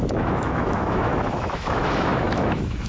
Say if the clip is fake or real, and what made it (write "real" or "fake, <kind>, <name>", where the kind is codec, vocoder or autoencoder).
fake, autoencoder, DAC-VAE